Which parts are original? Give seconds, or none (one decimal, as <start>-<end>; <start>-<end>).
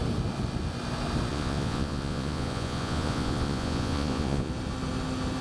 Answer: 0.0-1.3; 4.5-5.4